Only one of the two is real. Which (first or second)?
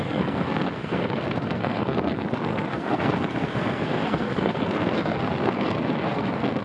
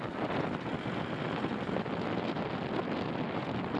second